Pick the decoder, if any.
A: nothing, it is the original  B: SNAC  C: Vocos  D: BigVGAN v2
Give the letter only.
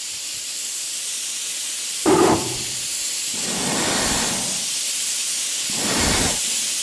A